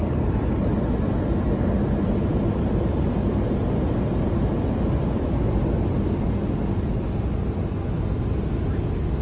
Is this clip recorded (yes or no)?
yes